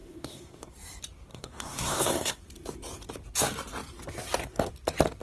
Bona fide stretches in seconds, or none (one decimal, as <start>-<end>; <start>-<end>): 0.7-1.3; 2.4-5.2